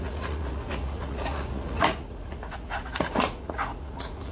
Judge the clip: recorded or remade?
remade